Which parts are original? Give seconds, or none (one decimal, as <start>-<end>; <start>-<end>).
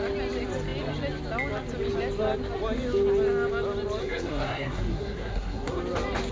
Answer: 0.0-4.0; 5.8-6.3